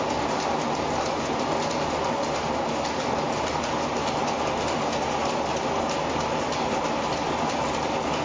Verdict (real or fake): real